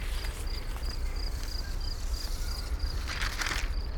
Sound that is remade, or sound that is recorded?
remade